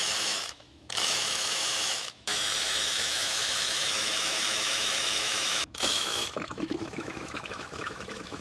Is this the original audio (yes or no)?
no